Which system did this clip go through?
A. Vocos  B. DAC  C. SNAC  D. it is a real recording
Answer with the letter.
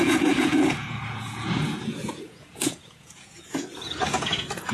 A